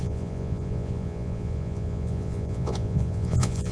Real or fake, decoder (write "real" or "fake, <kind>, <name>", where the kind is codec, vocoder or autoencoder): fake, vocoder, Vocos